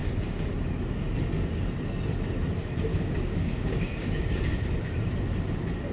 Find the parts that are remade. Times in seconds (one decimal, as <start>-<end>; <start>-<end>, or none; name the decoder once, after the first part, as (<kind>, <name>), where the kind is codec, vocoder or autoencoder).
0.0-0.5 (codec, DAC); 2.9-4.5